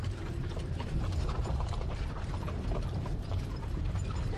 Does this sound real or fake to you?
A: fake